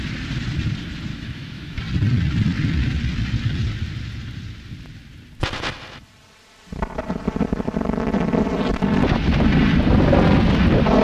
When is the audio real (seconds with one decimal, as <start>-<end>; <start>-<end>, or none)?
0.0-1.1; 1.8-11.0